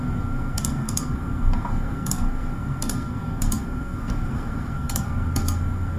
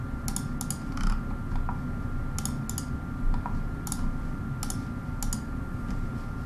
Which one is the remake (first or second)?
first